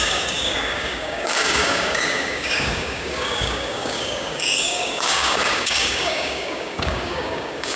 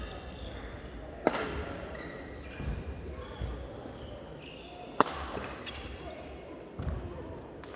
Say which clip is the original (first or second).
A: second